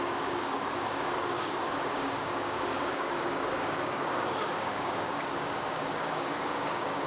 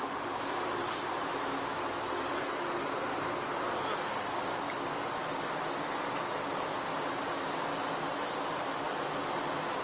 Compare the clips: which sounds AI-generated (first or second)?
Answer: first